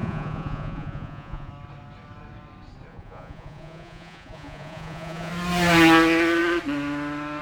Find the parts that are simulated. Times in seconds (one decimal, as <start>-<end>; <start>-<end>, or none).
0.0-1.5; 2.9-5.3